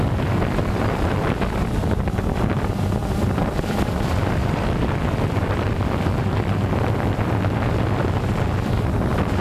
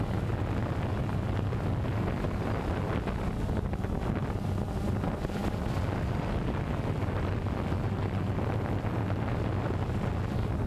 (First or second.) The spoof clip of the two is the first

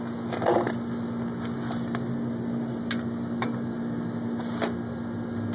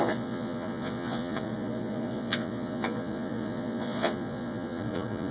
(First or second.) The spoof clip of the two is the second